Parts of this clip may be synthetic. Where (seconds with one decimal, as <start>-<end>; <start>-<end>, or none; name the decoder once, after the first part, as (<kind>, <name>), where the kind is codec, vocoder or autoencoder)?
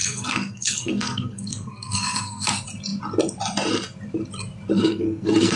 0.0-2.5 (codec, SNAC); 4.7-5.6